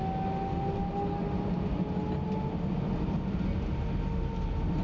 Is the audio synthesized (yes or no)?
no